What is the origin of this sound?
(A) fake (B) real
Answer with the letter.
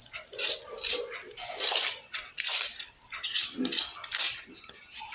B